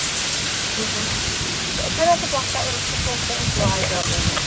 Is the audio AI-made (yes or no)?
yes